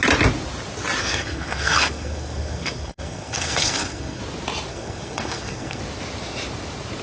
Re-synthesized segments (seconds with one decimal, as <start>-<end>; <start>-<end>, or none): 1.0-4.2; 4.7-5.8

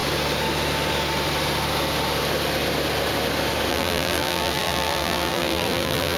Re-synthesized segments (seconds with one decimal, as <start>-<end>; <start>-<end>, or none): 3.7-6.2

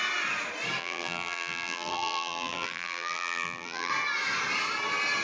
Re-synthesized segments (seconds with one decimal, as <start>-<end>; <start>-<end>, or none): 0.8-3.9